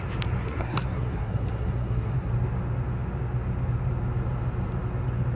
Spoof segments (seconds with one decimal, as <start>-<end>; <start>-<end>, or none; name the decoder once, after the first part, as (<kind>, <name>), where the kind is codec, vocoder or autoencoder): 0.4-2.3 (codec, SNAC)